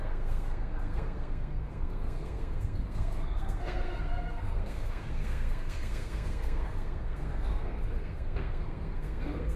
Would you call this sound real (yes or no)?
no